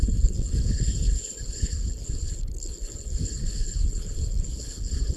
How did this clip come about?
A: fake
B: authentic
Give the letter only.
A